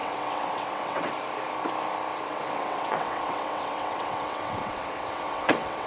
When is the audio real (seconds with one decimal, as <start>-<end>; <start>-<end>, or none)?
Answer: 1.1-2.3